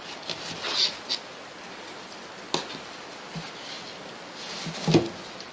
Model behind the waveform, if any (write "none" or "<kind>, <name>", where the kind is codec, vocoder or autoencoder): none